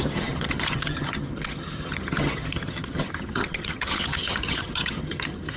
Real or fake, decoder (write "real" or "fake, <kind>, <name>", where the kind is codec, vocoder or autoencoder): fake, vocoder, HiFi-GAN